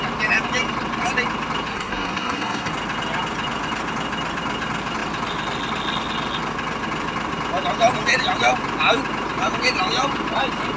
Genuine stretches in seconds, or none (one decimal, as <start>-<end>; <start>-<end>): 0.0-1.7; 2.7-10.8